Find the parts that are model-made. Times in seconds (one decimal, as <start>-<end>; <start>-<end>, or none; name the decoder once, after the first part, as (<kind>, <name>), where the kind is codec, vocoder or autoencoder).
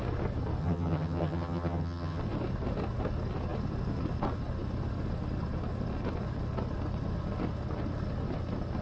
0.6-2.2 (vocoder, HiFi-GAN)